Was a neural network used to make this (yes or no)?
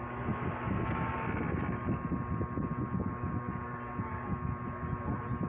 no